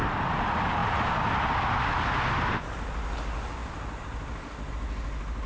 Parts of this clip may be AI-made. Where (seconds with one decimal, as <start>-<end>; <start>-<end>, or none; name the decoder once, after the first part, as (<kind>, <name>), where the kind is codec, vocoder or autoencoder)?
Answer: none